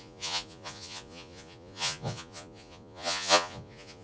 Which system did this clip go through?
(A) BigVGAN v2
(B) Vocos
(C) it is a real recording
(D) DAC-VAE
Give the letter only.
B